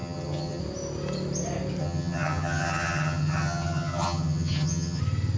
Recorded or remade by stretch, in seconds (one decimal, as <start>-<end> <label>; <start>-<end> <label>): 0.0-0.6 remade; 0.6-1.8 recorded; 1.8-5.0 remade; 5.0-5.4 recorded